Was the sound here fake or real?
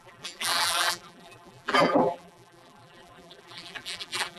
fake